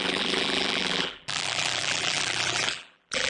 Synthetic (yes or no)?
yes